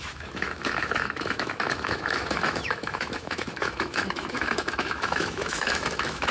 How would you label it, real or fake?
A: fake